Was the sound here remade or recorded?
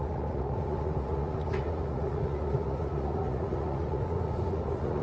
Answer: remade